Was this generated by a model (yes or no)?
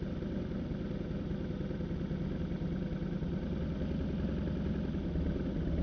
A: no